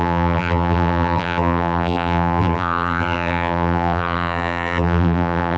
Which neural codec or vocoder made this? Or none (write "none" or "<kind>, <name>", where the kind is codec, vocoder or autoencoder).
vocoder, BigVGAN v2